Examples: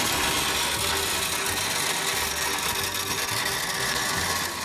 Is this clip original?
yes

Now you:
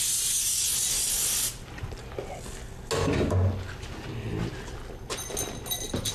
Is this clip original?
yes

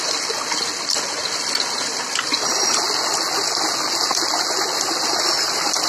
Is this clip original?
yes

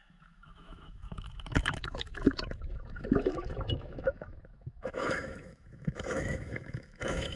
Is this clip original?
no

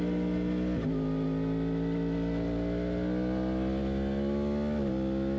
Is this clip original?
yes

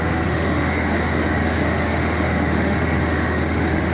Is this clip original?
no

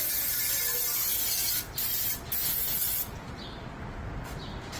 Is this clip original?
yes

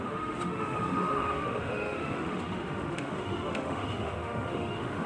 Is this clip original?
no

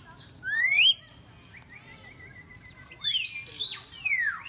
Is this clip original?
yes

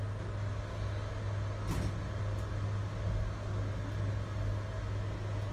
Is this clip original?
yes